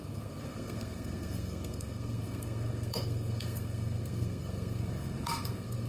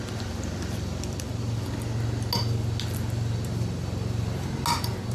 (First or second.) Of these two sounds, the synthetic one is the first